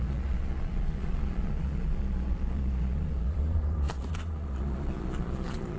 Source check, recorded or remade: remade